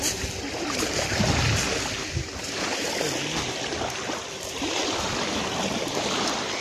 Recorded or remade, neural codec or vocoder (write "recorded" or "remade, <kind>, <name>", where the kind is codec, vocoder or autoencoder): recorded